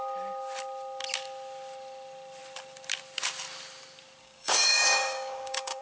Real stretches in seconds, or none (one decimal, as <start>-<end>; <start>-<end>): 0.0-4.2